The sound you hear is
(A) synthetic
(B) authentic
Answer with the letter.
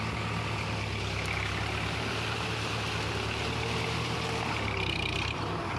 B